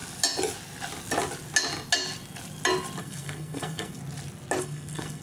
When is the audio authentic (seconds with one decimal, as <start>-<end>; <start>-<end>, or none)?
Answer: 0.0-3.0; 4.0-4.6